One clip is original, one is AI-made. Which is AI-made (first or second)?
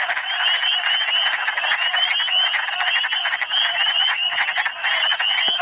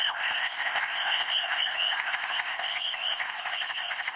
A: second